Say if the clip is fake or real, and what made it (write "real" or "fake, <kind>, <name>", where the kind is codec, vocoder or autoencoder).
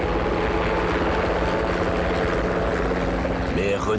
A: real